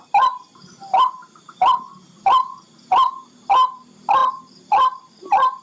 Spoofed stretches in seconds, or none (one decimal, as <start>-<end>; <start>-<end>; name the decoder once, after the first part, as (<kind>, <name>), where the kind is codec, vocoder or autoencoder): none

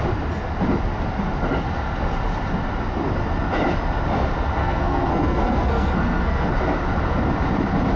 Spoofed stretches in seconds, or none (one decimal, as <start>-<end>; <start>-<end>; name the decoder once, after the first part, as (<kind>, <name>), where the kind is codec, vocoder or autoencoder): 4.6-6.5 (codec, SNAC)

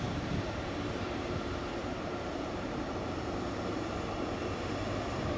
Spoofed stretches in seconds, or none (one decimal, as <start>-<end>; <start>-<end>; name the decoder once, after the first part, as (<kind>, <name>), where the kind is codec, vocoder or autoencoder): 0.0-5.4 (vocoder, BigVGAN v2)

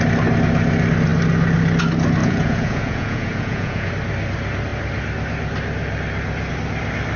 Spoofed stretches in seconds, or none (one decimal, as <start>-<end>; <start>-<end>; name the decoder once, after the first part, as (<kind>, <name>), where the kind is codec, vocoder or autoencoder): 2.2-3.9 (vocoder, Vocos)